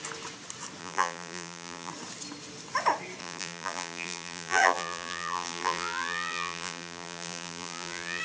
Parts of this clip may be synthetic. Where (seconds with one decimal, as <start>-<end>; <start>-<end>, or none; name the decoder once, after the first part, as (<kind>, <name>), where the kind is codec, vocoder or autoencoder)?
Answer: 0.8-1.9 (vocoder, BigVGAN v2); 3.2-8.2